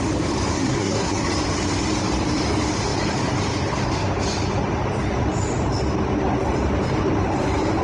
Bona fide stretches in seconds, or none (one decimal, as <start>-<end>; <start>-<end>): 0.0-0.5; 1.3-7.8